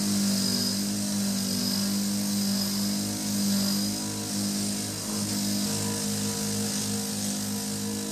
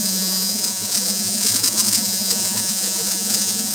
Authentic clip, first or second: first